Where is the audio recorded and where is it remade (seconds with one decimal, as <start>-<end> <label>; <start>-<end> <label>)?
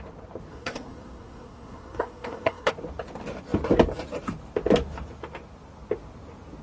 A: 0.0-0.5 recorded; 0.5-2.7 remade; 2.7-6.6 recorded